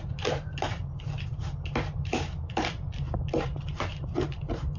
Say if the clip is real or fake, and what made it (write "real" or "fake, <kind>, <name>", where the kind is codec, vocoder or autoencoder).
fake, vocoder, BigVGAN v2